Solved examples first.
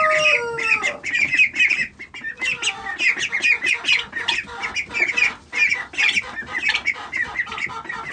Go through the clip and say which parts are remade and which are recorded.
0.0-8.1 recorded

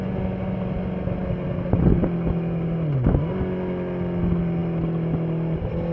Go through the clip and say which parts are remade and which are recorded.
0.0-5.9 recorded

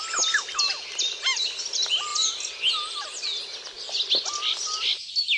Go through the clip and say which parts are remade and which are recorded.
0.0-5.4 recorded

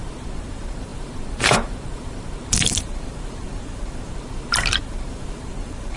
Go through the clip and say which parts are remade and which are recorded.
0.0-6.0 remade

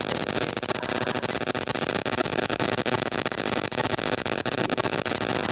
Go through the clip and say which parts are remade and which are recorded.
0.0-2.0 recorded; 2.0-5.1 remade; 5.1-5.5 recorded

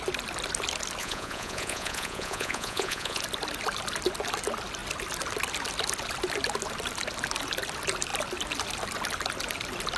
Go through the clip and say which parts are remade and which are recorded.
0.0-1.0 recorded; 1.0-3.2 remade; 3.2-10.0 recorded